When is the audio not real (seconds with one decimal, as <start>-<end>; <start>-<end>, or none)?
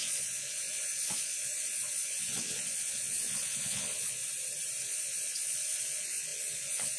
0.0-4.2; 4.8-7.0